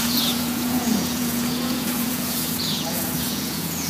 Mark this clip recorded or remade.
remade